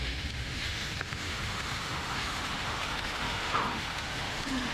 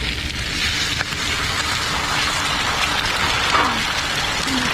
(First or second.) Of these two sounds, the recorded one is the second